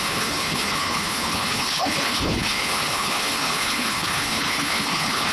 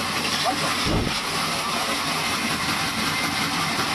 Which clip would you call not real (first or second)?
first